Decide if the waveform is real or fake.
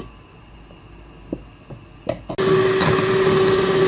real